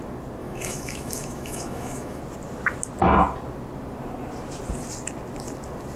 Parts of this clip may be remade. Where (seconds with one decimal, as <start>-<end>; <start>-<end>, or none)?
0.4-2.2